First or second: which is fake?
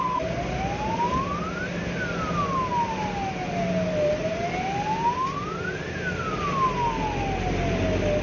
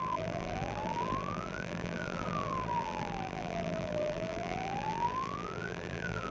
second